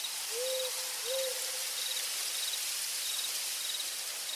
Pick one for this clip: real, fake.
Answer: real